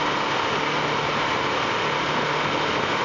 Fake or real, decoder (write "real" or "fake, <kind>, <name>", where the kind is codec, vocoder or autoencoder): real